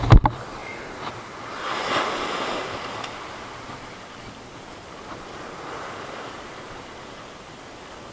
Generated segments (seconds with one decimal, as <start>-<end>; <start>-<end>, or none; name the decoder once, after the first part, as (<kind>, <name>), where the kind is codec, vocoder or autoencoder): none